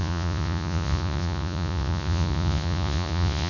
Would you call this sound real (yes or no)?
no